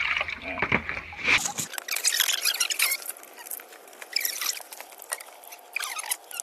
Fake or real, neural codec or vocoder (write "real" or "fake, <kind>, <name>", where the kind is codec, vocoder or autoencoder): real